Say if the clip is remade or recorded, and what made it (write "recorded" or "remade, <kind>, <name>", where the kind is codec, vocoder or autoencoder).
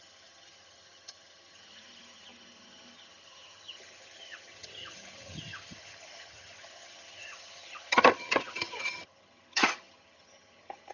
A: remade, vocoder, HiFi-GAN